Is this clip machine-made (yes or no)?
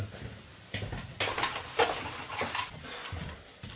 no